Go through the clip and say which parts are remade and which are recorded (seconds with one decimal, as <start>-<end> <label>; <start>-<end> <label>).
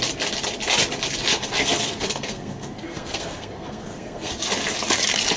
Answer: 0.0-1.3 recorded; 1.3-4.3 remade; 4.3-5.4 recorded